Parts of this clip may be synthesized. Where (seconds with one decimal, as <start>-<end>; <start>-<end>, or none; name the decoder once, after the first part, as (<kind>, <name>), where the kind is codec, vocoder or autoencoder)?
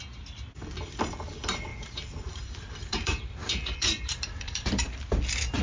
1.7-5.1 (vocoder, BigVGAN v2)